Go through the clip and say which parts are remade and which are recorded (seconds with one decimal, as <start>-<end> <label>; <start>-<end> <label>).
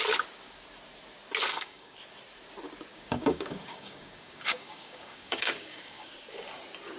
0.0-1.5 recorded; 1.5-2.0 remade; 2.0-2.9 recorded; 2.9-6.1 remade; 6.1-7.0 recorded